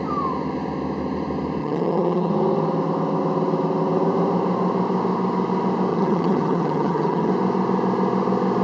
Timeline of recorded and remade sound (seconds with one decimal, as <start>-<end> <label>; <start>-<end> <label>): 0.0-1.6 recorded; 1.6-2.3 remade; 2.3-5.9 recorded; 5.9-7.3 remade; 7.3-8.6 recorded